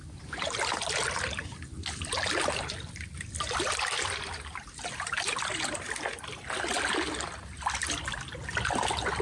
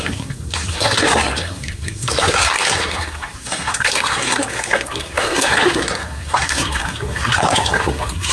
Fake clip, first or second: second